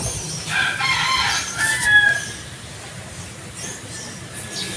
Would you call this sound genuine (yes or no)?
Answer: yes